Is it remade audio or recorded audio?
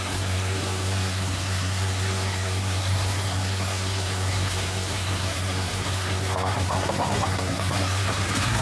remade